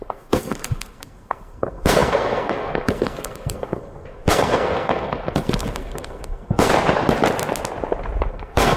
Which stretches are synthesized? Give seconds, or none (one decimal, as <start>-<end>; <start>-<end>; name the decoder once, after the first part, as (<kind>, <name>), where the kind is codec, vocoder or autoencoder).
0.0-6.7 (codec, SNAC); 8.3-8.8